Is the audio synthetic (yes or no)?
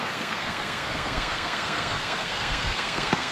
yes